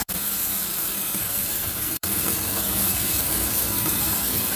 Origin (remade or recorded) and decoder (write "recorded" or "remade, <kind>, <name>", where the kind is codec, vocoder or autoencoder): remade, codec, SNAC